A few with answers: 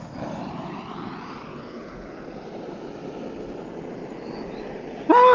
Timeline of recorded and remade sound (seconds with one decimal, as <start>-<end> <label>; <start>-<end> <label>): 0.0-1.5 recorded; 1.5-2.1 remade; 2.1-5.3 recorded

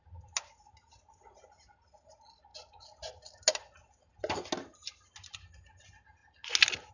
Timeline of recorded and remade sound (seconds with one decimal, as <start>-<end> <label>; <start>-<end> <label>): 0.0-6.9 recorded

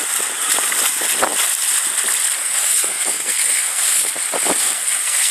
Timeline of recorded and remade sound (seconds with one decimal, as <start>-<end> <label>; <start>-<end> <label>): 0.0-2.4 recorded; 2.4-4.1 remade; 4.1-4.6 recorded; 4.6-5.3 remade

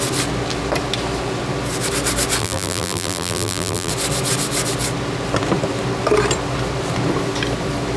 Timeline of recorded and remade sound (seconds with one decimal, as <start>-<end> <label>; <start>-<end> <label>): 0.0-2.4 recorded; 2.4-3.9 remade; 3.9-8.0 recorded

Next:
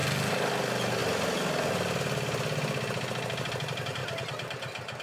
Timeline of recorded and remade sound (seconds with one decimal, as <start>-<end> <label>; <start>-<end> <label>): 0.0-5.0 recorded

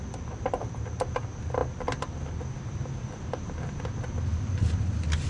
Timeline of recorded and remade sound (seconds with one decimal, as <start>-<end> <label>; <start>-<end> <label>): 0.0-5.3 recorded

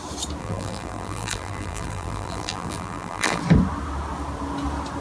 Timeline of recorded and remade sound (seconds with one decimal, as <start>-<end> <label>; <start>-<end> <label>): 0.0-0.4 recorded; 0.4-3.4 remade; 3.4-5.0 recorded